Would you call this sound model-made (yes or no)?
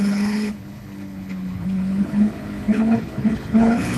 yes